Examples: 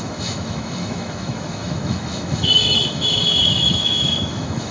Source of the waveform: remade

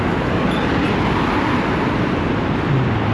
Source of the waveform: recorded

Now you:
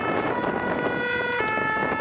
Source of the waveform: recorded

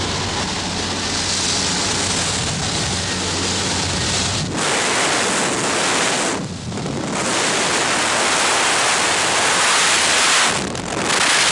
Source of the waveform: recorded